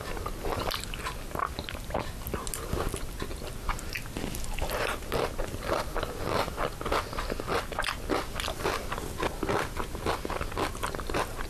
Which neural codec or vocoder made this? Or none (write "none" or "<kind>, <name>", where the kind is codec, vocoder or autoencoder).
none